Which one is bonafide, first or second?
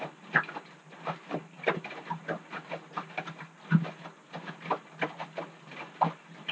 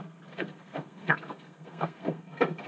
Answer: first